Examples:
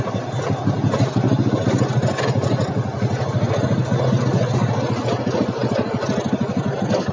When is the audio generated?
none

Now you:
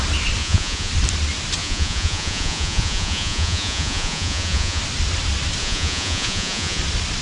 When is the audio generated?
0.4-0.9; 1.6-4.8; 5.6-6.8

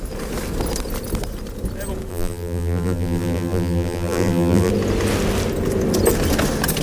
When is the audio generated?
2.1-4.7